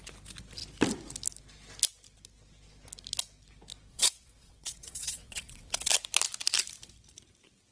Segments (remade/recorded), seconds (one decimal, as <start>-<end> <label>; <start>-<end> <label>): 0.0-3.9 recorded; 3.9-5.9 remade; 5.9-7.7 recorded